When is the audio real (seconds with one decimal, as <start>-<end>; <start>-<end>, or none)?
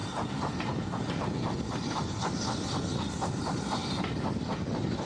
0.0-5.1